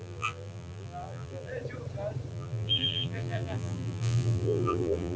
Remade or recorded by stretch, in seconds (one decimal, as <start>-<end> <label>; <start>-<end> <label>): 0.0-1.5 remade; 1.5-2.3 recorded; 2.3-5.2 remade